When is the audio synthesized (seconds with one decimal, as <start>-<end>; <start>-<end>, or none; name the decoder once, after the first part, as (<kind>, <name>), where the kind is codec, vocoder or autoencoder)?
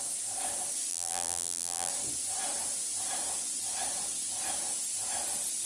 0.9-1.9 (vocoder, BigVGAN v2)